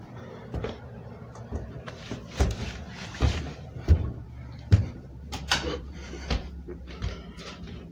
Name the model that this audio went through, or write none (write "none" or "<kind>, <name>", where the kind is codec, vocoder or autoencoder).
vocoder, BigVGAN v2